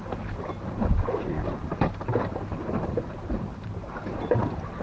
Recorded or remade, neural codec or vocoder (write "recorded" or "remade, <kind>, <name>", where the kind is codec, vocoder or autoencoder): remade, vocoder, BigVGAN v2